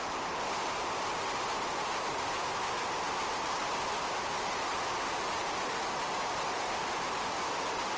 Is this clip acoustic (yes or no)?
yes